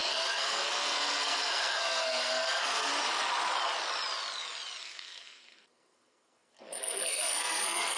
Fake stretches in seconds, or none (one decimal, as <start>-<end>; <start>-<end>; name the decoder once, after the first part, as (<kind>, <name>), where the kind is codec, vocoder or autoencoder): 0.0-2.9 (codec, SNAC); 4.8-8.0